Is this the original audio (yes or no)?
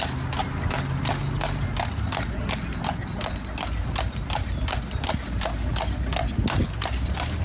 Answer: yes